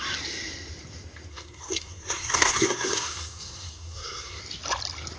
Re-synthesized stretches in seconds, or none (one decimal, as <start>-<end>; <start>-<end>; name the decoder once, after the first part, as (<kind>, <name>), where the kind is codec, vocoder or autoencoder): 1.3-4.4 (codec, SNAC)